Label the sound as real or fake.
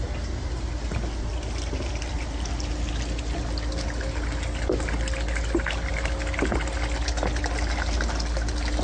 real